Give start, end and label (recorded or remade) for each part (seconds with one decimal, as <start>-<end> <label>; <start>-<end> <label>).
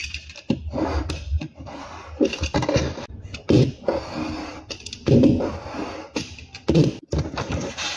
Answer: 0.0-8.0 recorded